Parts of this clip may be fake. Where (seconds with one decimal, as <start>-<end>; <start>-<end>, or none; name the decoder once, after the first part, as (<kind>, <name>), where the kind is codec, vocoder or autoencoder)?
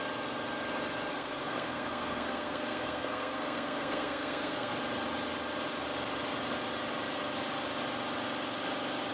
1.1-4.7 (codec, SNAC)